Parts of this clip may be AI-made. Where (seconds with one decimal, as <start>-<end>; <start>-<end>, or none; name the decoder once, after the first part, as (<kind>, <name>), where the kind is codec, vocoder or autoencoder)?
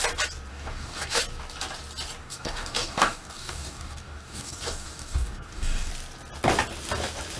0.5-1.2 (codec, DAC); 2.2-5.9